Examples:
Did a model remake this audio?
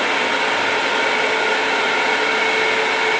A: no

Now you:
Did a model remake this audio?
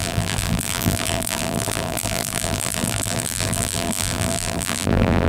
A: yes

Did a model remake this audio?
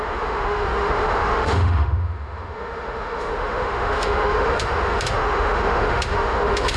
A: yes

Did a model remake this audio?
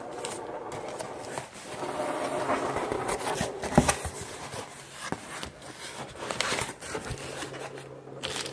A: no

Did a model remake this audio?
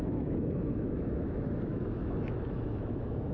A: yes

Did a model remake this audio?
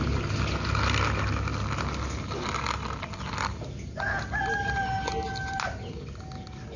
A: no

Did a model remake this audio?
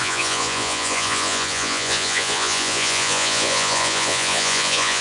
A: yes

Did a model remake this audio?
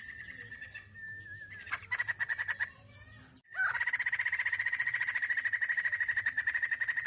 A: no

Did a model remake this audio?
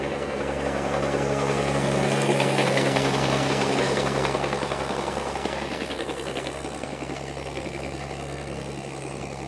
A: yes